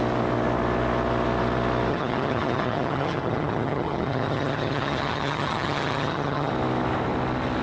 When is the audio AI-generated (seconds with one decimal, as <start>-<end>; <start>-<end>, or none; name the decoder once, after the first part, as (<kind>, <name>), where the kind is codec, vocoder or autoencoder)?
1.9-6.5 (vocoder, HiFi-GAN)